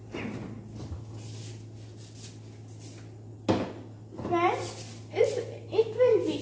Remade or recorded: recorded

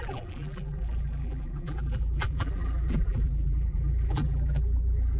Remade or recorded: remade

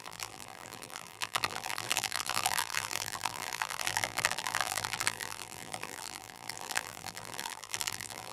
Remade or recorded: remade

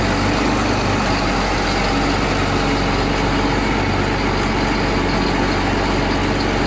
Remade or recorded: recorded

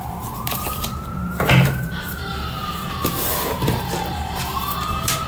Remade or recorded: remade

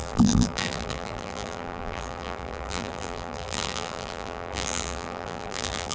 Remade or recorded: remade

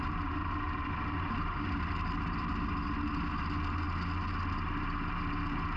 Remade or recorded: recorded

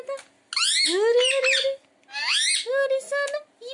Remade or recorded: recorded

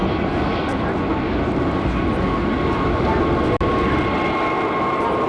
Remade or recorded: recorded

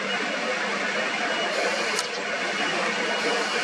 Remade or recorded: recorded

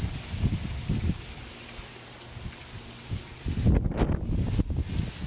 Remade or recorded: recorded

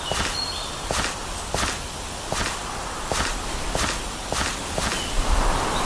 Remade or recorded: recorded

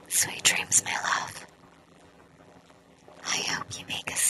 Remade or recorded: remade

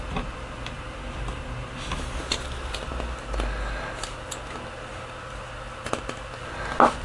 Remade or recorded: recorded